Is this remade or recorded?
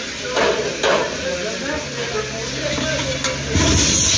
recorded